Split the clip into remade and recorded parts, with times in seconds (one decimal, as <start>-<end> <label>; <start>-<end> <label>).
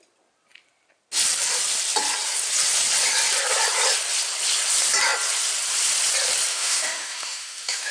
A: 0.0-6.5 recorded; 6.5-7.9 remade